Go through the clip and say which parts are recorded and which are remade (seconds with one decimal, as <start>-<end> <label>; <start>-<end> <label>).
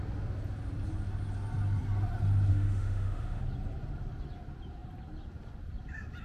0.0-2.5 recorded; 2.5-3.4 remade; 3.4-6.2 recorded